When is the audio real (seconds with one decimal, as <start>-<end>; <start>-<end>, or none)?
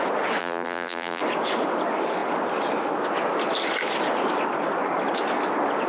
0.0-0.4; 1.2-5.9